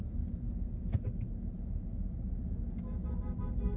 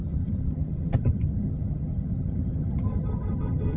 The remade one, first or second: second